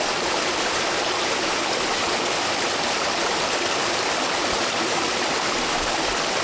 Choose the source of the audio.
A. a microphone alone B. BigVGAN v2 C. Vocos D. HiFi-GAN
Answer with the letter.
A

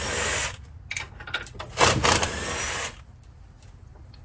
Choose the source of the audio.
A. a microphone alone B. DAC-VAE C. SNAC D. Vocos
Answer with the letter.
A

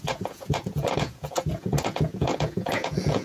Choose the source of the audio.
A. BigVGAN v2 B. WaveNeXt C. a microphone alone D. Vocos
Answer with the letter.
D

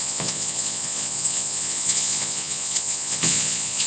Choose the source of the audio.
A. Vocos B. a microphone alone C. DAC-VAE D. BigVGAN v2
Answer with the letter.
A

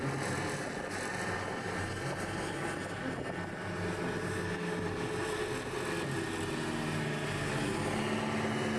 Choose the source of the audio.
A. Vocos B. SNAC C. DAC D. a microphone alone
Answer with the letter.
D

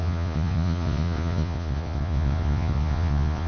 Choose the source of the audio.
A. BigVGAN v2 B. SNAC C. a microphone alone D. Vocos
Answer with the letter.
D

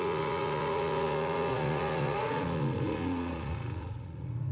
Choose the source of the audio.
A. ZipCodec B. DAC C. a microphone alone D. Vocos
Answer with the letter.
D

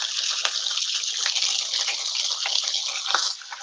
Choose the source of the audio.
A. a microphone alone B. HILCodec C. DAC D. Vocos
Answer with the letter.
A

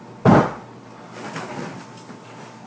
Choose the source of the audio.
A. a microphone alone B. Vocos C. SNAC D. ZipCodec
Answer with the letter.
A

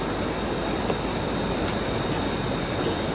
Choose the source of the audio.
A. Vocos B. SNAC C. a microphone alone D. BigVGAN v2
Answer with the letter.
C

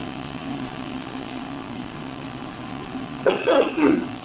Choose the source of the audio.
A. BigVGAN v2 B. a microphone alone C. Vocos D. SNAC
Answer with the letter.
C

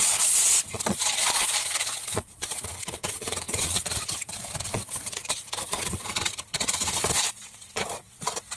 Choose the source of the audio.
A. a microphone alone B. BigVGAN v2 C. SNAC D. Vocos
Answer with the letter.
D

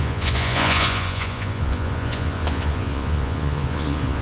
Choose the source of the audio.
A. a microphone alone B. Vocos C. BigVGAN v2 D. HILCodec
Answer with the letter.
B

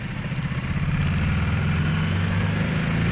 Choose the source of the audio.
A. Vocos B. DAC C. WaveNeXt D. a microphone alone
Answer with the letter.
D